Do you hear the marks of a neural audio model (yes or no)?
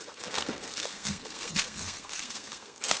yes